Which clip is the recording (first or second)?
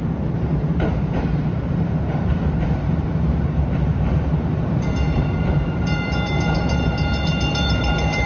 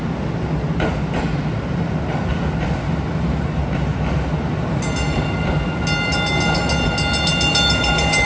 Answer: second